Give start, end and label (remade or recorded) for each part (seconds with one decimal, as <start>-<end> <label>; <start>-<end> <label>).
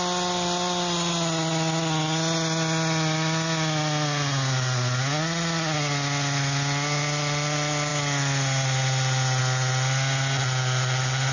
0.0-11.3 recorded